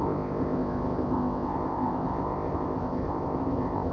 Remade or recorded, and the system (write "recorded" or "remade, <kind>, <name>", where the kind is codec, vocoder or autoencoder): remade, codec, ZipCodec